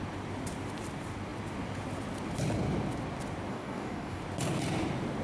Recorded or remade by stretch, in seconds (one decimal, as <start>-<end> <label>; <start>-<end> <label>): 0.0-3.5 recorded; 3.5-4.2 remade; 4.2-5.2 recorded

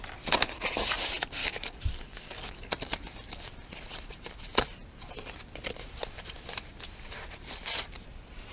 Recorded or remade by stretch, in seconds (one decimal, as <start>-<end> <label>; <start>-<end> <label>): 0.0-1.4 recorded; 1.4-2.7 remade; 2.7-8.5 recorded

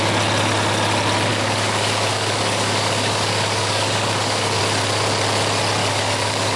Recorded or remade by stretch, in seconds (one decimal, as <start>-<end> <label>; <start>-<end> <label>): 0.0-1.3 recorded; 1.3-4.6 remade; 4.6-5.8 recorded; 5.8-6.6 remade

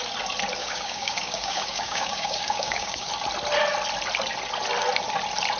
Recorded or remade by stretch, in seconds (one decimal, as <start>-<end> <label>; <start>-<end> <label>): 0.0-0.6 recorded; 0.6-3.1 remade; 3.1-5.6 recorded

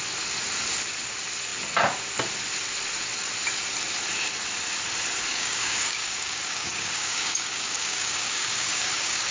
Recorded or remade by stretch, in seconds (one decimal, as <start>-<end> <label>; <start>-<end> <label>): 0.0-5.3 recorded; 5.3-9.3 remade

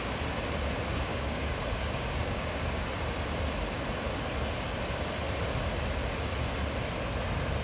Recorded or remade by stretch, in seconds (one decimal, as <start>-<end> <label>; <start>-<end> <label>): 0.0-1.1 recorded; 1.1-2.9 remade; 2.9-7.6 recorded